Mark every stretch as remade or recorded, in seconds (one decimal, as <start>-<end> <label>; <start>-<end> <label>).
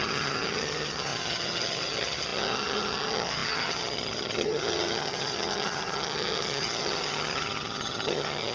0.0-8.5 remade